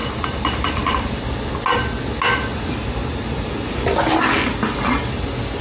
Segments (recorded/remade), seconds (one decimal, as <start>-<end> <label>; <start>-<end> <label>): 0.0-1.2 remade; 1.2-2.5 recorded; 2.5-3.7 remade; 3.7-5.6 recorded